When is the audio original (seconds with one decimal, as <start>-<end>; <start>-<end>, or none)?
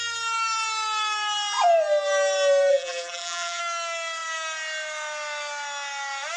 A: 0.0-2.7; 3.6-6.4